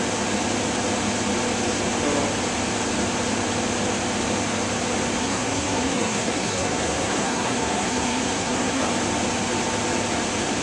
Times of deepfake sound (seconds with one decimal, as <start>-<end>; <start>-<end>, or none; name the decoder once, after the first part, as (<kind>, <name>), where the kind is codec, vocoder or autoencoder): 5.2-8.8 (codec, SNAC)